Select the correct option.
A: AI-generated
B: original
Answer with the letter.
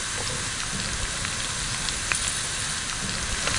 B